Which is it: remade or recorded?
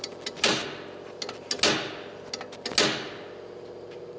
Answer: recorded